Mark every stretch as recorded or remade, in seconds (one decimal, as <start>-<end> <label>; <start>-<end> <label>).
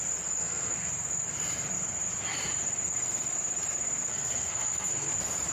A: 0.0-0.4 recorded; 0.4-0.9 remade; 0.9-4.1 recorded; 4.1-5.1 remade; 5.1-5.5 recorded